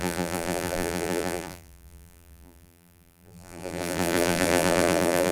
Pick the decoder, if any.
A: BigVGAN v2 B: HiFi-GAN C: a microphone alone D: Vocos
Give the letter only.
A